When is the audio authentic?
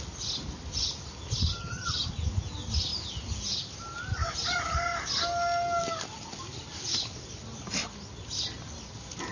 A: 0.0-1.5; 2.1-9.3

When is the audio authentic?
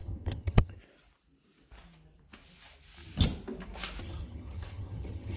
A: 0.8-4.0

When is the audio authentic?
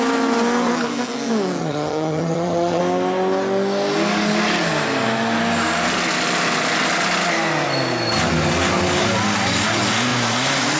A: 0.0-1.6; 2.8-10.8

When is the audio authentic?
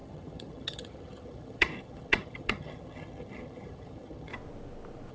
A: 4.3-5.1